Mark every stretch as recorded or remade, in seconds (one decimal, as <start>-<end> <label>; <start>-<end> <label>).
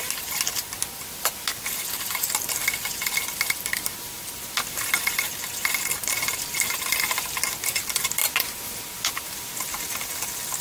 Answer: 0.0-10.6 recorded